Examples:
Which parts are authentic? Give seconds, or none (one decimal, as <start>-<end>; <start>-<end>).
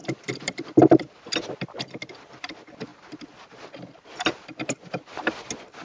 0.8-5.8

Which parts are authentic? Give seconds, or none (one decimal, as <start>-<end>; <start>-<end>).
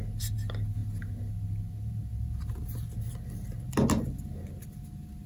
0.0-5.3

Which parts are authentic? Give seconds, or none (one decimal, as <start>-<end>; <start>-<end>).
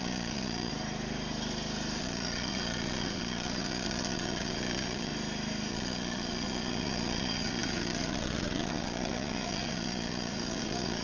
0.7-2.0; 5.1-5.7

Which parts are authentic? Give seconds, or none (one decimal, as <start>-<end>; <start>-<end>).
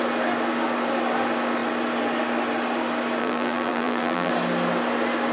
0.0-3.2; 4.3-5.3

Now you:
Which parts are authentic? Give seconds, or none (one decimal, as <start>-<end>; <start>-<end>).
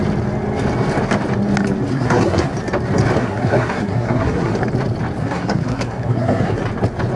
0.0-1.9; 2.5-3.2; 4.6-5.2; 6.6-7.2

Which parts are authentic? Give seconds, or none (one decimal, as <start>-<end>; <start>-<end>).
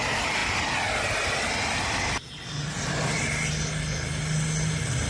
0.0-5.1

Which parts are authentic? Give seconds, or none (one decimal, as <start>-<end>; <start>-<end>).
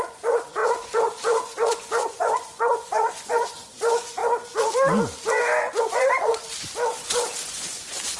4.2-5.8; 6.4-7.4